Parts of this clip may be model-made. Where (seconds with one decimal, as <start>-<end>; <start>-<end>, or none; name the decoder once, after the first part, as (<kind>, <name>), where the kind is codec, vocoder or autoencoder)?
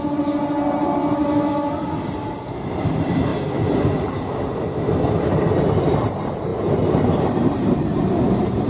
0.0-1.2 (vocoder, BigVGAN v2); 2.5-3.3; 5.1-6.5; 7.2-8.7